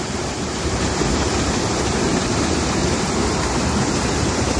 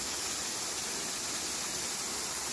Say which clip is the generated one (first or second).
first